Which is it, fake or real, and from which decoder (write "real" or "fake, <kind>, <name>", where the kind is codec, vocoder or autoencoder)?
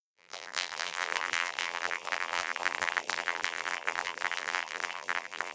fake, vocoder, BigVGAN v2